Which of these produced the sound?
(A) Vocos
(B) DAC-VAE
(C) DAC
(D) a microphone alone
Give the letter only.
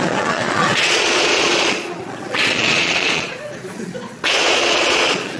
A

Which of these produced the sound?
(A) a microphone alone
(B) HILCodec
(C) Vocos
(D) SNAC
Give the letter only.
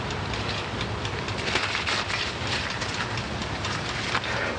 A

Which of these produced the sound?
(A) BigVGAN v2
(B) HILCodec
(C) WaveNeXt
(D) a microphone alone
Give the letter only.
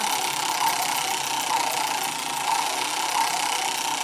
D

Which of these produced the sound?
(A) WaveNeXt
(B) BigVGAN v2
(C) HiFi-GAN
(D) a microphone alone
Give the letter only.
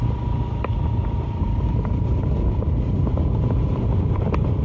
D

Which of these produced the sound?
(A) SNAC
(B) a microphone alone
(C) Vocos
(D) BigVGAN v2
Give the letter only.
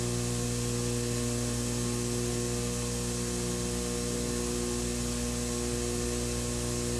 B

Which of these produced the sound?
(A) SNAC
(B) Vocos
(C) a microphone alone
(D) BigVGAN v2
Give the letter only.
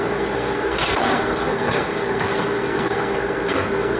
A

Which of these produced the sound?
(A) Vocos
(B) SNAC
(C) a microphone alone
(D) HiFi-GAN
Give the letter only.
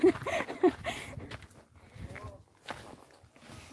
C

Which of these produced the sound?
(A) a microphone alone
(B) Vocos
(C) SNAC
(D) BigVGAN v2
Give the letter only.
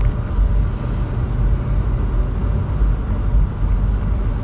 A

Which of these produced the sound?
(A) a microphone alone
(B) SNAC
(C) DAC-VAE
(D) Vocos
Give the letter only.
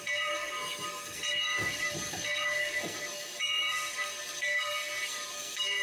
B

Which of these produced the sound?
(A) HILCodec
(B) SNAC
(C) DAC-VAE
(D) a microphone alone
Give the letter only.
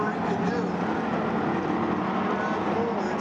D